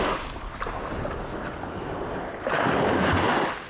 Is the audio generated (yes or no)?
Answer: no